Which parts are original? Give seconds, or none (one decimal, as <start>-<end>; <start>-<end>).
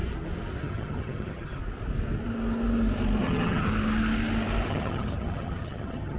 0.0-0.6; 1.6-3.2; 3.7-4.7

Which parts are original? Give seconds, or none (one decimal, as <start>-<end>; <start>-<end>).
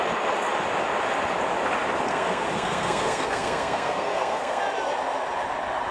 0.0-2.1; 4.6-5.9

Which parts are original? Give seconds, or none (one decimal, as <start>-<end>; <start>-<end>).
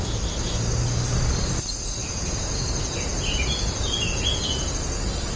0.0-2.0; 4.7-5.4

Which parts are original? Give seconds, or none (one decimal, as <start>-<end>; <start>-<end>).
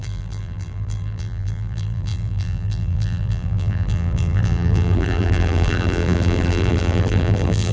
none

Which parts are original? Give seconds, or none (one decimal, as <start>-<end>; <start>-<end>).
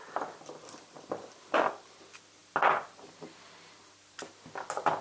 2.4-5.0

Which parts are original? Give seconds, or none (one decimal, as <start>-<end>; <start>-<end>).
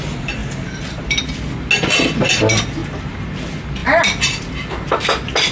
0.0-0.4; 1.2-2.8; 3.3-5.5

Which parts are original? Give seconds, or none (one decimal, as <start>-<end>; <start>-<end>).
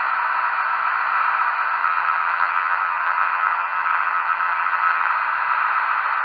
0.0-1.8; 5.1-6.2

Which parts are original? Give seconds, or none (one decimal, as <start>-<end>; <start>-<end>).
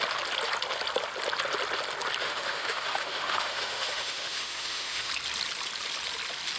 0.0-2.2; 5.1-6.6